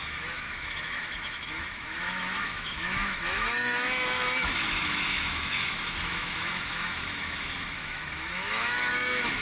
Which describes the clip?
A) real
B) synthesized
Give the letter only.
B